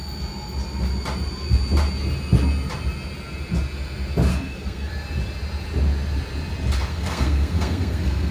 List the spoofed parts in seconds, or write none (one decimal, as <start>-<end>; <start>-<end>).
4.3-4.9; 6.9-8.3